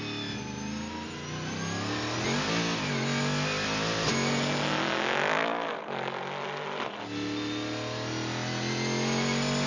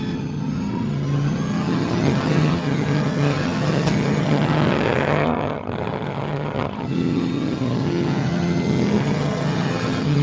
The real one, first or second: first